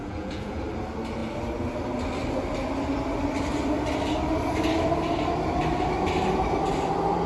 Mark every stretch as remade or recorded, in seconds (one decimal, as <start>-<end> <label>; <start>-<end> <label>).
0.0-0.6 remade; 0.6-7.3 recorded